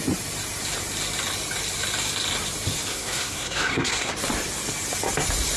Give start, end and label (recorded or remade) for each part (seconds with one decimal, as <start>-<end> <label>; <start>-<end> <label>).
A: 0.0-2.9 recorded; 2.9-4.1 remade; 4.1-5.6 recorded